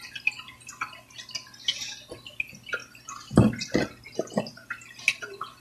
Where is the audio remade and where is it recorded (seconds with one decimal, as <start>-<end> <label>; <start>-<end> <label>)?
0.0-5.6 recorded